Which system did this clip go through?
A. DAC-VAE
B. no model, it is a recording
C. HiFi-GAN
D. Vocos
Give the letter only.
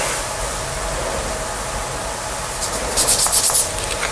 B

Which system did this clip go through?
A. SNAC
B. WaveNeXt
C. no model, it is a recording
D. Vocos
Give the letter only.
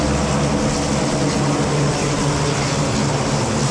C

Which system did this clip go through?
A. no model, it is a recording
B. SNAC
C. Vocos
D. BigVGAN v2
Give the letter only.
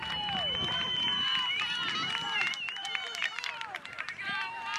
D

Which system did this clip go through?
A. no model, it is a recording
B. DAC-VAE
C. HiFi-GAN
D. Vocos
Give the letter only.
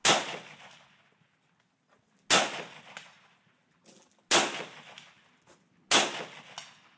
A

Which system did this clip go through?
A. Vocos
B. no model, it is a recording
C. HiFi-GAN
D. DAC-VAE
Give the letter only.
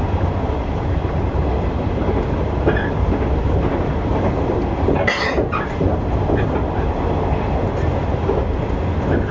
B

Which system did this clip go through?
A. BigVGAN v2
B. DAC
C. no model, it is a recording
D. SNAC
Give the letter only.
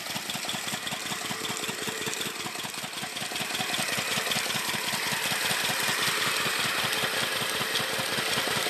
C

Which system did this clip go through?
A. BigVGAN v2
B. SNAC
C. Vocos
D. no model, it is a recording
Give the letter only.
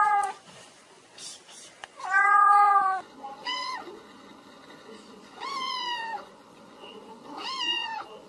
C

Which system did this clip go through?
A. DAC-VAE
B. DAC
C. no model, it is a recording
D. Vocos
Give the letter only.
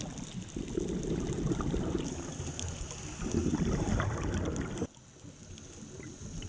C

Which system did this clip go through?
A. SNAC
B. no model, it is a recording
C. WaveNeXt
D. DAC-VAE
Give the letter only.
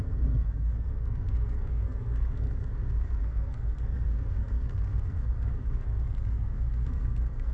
A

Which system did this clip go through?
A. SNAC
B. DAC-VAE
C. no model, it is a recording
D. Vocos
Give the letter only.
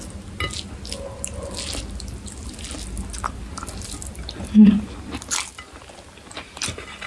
C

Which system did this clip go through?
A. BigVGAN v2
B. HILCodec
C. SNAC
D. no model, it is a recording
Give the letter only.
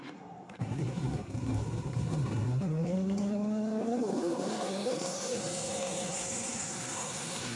C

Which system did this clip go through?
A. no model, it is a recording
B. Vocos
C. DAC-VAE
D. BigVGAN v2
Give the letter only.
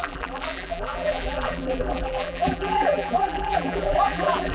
D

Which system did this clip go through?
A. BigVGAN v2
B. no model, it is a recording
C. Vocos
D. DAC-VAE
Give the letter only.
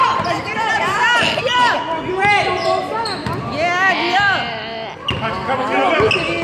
B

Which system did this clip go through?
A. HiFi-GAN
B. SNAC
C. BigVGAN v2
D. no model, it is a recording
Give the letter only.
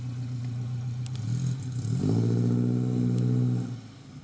D